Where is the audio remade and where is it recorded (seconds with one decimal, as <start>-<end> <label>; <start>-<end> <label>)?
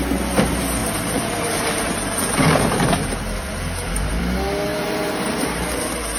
0.0-0.8 recorded; 0.8-4.2 remade; 4.2-4.7 recorded; 4.7-6.2 remade